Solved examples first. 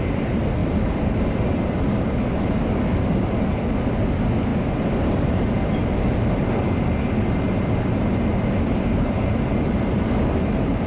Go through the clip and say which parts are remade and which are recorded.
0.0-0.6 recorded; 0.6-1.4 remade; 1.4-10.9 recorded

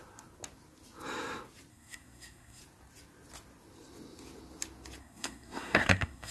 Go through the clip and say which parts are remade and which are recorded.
0.0-1.7 recorded; 1.7-2.6 remade; 2.6-5.0 recorded; 5.0-6.3 remade